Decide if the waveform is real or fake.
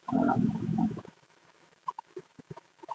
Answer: fake